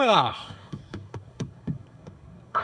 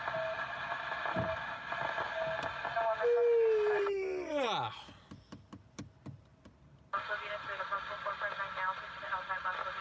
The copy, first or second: first